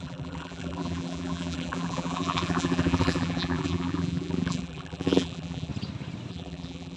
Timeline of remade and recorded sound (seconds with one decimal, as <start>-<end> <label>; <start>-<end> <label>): 0.0-5.7 remade; 5.7-6.3 recorded; 6.3-7.0 remade